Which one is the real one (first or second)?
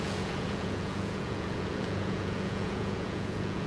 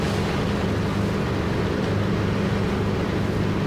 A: second